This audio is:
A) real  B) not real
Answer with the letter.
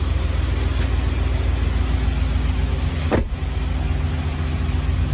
A